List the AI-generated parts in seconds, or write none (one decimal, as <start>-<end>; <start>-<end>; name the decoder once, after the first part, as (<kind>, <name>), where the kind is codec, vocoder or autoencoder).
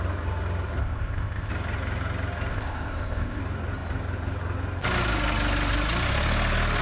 0.8-1.5 (codec, ZipCodec); 2.5-3.4